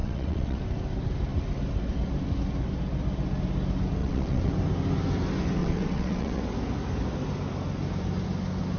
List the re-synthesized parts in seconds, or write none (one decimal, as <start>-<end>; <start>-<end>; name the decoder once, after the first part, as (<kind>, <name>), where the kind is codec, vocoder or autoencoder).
0.0-0.6 (vocoder, WaveNeXt); 4.0-4.5; 5.6-6.4